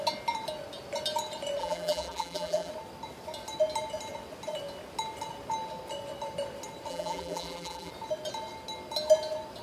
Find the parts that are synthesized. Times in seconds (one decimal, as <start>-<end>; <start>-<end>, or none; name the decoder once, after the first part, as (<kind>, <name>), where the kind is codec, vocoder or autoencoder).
1.6-2.7 (vocoder, BigVGAN v2); 6.9-7.9